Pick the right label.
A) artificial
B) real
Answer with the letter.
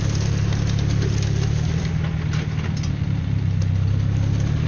B